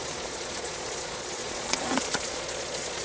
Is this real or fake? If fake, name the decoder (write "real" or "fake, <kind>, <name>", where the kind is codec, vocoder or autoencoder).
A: fake, vocoder, Vocos